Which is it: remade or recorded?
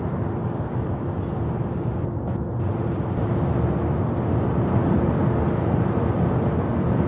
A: recorded